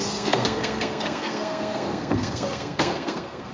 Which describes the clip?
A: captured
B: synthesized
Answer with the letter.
B